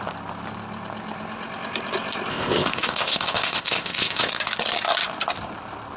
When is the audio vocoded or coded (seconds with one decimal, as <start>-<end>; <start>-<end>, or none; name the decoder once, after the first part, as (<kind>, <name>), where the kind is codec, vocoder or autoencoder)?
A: 2.3-4.3 (codec, ZipCodec)